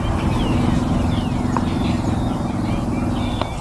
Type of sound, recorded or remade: recorded